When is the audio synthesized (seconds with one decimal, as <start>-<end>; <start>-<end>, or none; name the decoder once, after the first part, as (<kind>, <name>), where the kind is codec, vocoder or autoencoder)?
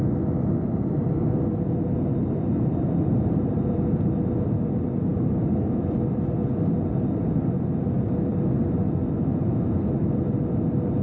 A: 5.1-5.8 (codec, DAC)